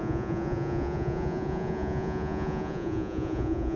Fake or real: fake